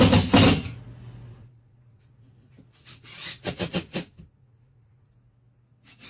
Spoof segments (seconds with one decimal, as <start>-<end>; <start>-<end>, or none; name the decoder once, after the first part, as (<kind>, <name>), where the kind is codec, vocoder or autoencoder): 1.4-5.1 (vocoder, Vocos)